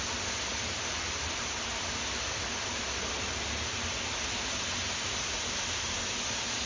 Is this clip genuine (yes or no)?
yes